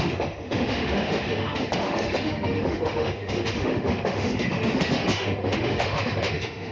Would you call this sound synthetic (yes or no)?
yes